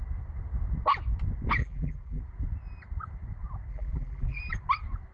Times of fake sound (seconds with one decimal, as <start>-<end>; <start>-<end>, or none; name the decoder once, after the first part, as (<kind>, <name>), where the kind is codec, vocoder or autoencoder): 1.6-2.2 (vocoder, BigVGAN v2); 3.7-4.4